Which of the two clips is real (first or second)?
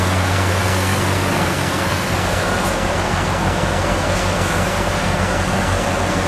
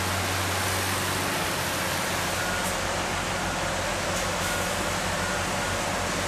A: second